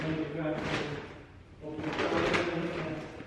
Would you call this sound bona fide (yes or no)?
yes